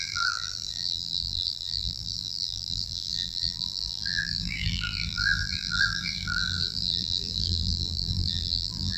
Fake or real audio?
fake